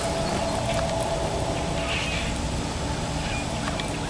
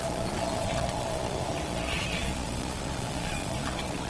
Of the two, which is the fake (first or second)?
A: second